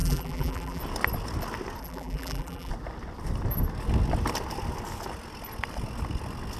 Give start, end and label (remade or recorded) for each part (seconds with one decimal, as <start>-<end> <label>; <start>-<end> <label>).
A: 0.0-0.8 remade; 0.8-1.8 recorded; 1.8-2.7 remade; 2.7-6.6 recorded